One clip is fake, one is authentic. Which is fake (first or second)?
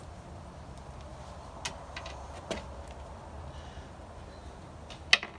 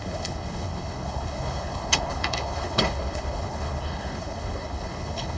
second